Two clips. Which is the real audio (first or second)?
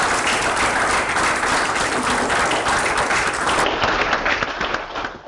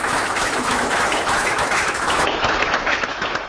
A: first